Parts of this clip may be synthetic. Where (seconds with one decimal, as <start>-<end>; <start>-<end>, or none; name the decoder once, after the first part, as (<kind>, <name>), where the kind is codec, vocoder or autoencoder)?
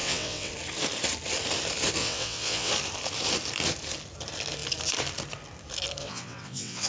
0.0-0.5 (vocoder, WaveNeXt); 2.0-2.7; 6.0-6.9